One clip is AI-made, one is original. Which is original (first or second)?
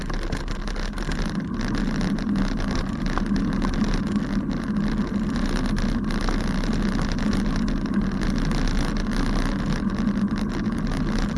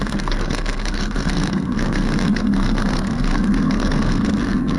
first